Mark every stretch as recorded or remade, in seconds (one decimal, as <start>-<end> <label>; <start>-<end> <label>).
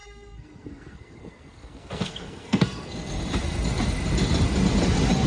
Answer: 0.0-3.2 remade; 3.2-5.3 recorded